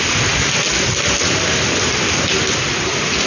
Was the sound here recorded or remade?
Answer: recorded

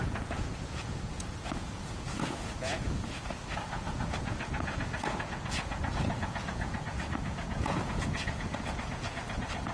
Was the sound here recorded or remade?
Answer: remade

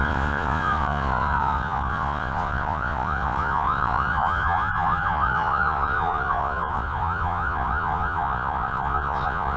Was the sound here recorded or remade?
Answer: remade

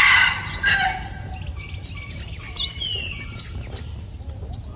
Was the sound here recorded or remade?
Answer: recorded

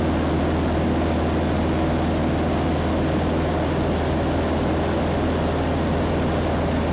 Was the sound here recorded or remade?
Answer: recorded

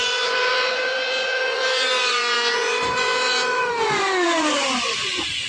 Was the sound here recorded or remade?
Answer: remade